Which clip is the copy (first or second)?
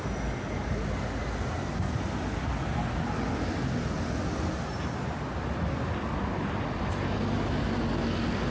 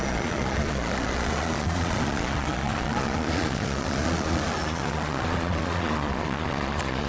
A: second